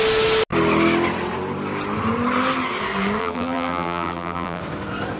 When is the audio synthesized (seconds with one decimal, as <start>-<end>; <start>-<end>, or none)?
3.2-4.6